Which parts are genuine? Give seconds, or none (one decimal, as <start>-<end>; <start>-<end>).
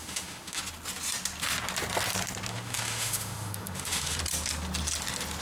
0.6-2.5; 4.2-5.4